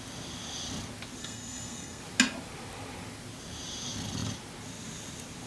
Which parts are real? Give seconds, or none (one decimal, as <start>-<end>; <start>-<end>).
0.0-1.2; 2.0-5.5